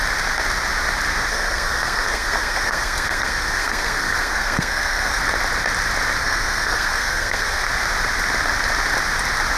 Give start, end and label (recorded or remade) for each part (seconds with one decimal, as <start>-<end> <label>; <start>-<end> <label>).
0.0-1.3 recorded; 1.3-5.2 remade; 5.2-6.2 recorded; 6.2-7.7 remade; 7.7-9.6 recorded